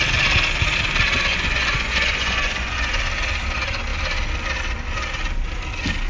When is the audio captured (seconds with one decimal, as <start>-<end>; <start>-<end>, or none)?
0.0-1.3; 2.9-6.1